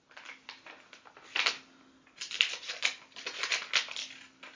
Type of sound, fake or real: real